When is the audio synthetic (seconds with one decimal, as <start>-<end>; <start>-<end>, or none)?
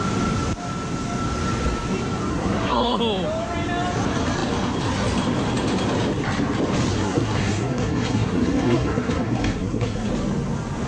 2.3-3.0; 6.9-10.1